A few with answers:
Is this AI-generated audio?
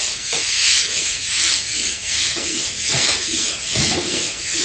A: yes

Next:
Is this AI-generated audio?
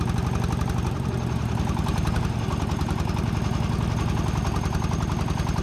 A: no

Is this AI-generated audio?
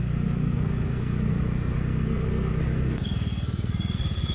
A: yes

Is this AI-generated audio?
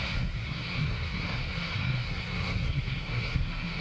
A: yes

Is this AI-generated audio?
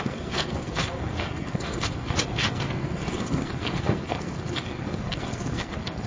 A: yes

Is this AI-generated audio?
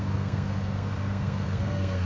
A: yes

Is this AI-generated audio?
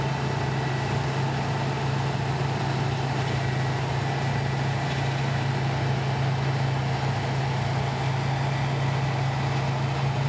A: no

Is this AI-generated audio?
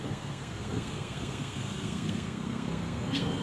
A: yes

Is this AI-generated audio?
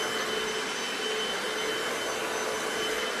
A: no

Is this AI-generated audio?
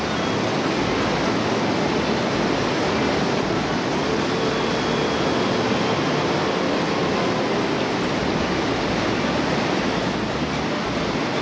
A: no